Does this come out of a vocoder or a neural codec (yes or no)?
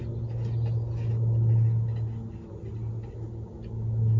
no